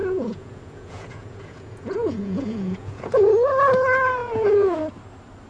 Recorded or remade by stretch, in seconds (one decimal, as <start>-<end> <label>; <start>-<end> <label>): 0.0-3.3 remade; 3.3-4.2 recorded; 4.2-4.8 remade; 4.8-5.5 recorded